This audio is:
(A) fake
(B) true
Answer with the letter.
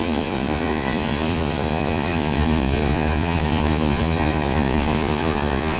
A